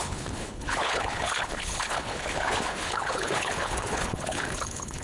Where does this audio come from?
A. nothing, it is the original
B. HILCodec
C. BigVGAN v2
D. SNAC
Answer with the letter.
B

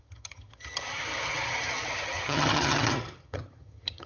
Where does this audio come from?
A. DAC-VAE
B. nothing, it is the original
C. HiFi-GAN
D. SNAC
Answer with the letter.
C